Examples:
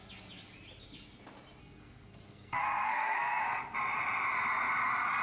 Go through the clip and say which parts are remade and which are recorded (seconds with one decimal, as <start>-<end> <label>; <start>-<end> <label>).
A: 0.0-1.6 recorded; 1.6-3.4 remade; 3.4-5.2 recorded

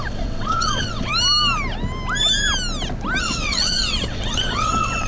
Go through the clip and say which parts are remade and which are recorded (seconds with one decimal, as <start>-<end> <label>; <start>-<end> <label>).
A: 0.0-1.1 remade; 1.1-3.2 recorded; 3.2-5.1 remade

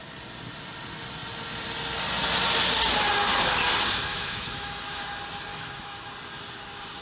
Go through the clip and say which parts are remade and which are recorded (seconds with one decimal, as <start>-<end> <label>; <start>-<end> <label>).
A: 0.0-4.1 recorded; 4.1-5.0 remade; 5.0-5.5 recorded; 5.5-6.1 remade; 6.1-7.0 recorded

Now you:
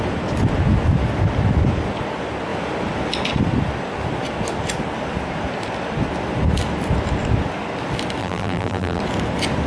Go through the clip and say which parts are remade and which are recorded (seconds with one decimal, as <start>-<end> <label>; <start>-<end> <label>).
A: 0.0-8.2 recorded; 8.2-9.0 remade; 9.0-9.7 recorded

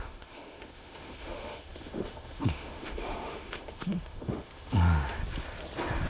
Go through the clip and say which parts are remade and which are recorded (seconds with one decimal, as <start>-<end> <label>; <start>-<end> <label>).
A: 0.0-5.2 remade; 5.2-6.1 recorded